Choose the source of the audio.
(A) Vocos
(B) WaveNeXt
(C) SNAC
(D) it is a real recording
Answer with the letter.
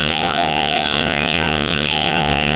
B